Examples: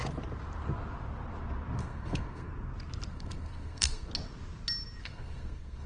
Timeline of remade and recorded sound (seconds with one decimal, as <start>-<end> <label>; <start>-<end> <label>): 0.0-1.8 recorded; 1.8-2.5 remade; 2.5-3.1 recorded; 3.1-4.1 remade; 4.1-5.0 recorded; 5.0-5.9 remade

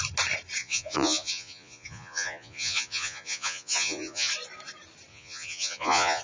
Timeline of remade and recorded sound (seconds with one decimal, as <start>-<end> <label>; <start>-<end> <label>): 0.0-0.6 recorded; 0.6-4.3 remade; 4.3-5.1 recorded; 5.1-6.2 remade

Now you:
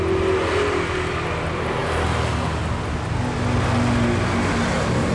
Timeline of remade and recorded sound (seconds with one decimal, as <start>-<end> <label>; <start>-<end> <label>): 0.0-5.1 recorded

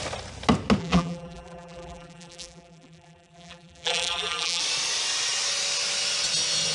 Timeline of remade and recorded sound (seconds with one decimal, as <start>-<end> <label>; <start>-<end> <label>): 0.0-0.8 recorded; 0.8-4.6 remade; 4.6-6.7 recorded